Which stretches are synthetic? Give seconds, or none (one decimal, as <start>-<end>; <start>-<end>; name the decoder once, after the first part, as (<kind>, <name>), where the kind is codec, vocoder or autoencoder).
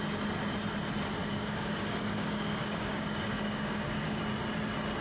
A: 1.2-4.2 (codec, DAC)